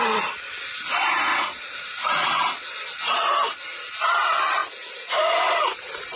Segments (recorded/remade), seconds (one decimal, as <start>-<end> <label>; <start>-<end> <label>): 0.0-1.3 recorded; 1.3-2.1 remade; 2.1-6.2 recorded